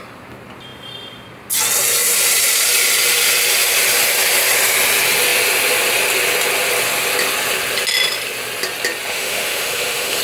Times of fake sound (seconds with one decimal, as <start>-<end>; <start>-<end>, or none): 9.1-10.2